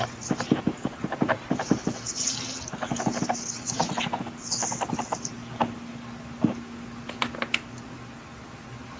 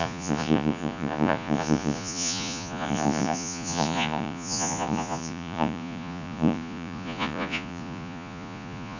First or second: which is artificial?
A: second